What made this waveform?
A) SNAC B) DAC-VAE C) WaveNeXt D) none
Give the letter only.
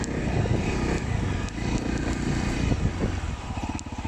D